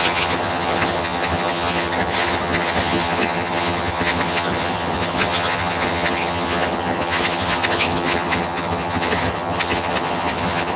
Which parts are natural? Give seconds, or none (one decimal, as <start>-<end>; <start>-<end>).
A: none